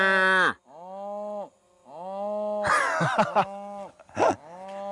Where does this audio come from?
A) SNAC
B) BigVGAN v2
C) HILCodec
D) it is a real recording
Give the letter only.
D